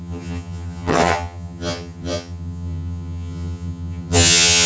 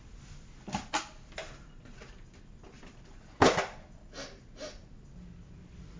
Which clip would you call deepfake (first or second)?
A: first